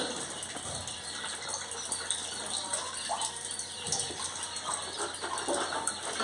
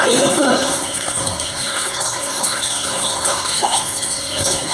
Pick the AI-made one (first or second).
second